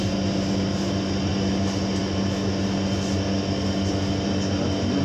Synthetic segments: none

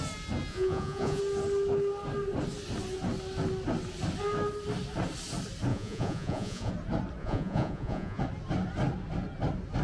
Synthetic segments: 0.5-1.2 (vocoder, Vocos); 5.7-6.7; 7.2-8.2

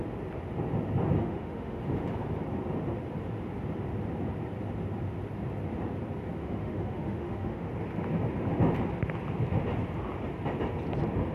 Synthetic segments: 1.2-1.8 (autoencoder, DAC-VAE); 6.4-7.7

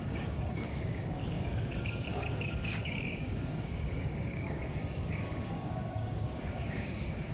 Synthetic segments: 0.0-7.3 (codec, DAC)

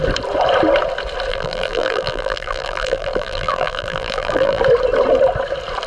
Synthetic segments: 1.3-4.6 (vocoder, BigVGAN v2)

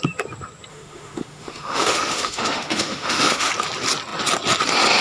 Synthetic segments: 0.7-3.5 (autoencoder, DAC-VAE)